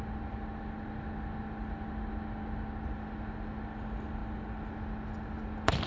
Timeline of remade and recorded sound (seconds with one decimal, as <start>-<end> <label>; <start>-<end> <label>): 0.0-5.9 recorded